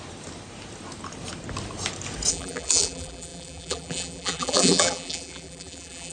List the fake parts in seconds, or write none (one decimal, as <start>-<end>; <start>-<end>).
2.3-6.1